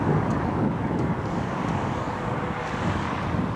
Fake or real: fake